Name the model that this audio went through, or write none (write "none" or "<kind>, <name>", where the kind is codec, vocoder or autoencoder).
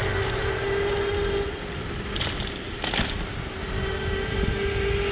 none